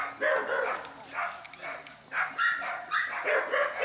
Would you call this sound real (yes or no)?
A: yes